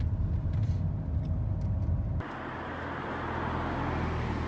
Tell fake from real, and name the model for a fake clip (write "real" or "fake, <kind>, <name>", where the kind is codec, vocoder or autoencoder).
real